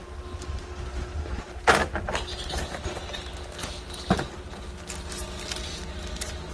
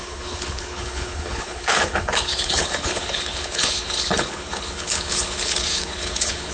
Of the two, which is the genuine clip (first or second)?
first